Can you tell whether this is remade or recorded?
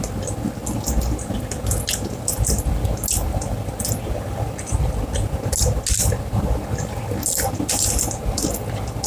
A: recorded